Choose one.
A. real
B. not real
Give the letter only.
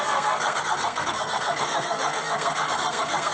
B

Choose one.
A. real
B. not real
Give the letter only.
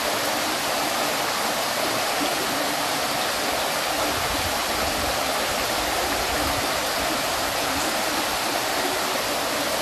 B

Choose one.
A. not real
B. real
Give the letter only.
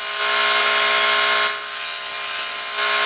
B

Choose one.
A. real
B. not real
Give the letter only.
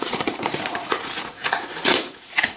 B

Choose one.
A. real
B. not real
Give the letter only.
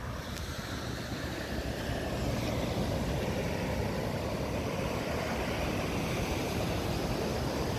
A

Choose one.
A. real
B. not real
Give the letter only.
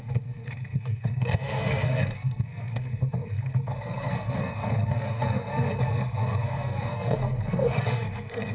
B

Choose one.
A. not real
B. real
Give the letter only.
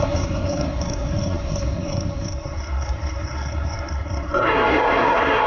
A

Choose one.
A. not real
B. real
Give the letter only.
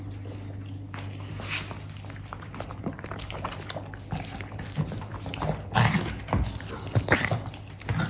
B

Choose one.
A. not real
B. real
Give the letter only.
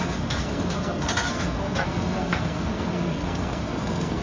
A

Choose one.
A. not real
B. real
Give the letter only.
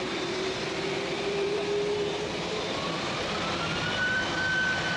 A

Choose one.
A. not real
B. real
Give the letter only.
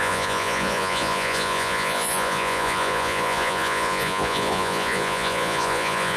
A